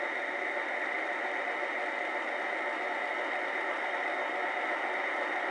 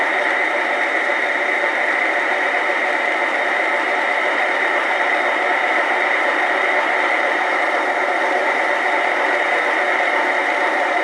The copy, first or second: second